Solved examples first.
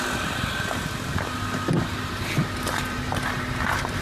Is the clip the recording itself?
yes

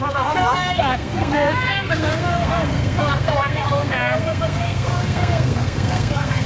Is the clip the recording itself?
no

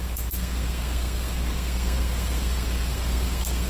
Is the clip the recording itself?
no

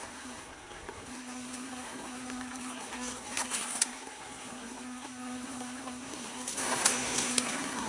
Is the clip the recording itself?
no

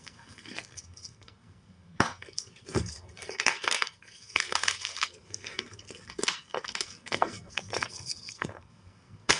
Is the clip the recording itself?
no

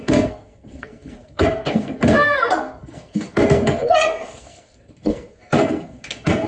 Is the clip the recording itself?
no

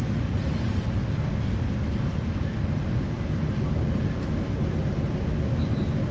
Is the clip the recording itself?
yes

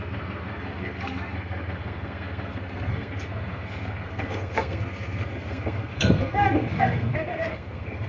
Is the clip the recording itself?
no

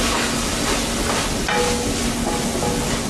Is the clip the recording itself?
yes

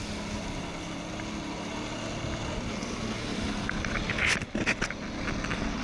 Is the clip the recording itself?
yes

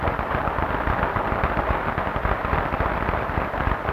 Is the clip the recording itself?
yes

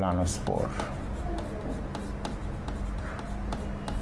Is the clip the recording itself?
yes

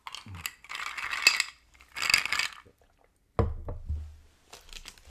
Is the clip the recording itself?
yes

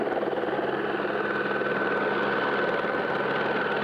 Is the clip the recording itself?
yes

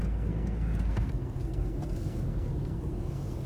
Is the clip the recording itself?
no